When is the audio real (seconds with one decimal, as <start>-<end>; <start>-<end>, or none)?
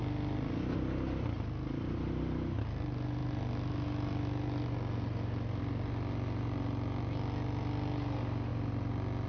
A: 0.0-9.3